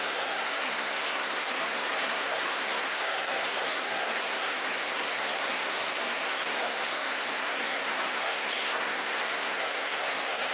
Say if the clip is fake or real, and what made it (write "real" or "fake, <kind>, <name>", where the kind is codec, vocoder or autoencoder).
fake, codec, SNAC